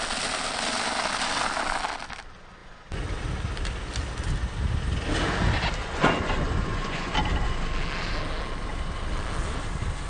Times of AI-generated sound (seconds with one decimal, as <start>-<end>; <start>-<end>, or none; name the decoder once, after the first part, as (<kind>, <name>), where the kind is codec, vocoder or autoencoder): 5.8-7.1 (vocoder, Vocos)